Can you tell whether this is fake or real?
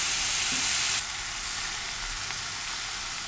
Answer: real